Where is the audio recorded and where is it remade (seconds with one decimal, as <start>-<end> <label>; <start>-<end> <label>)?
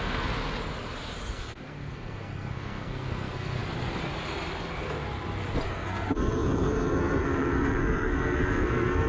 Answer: 0.0-0.4 remade; 0.4-1.3 recorded; 1.3-3.6 remade; 3.6-5.7 recorded; 5.7-9.1 remade